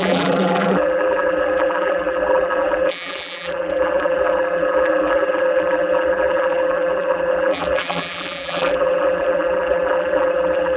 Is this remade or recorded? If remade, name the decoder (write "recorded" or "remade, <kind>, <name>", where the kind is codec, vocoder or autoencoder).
remade, vocoder, BigVGAN v2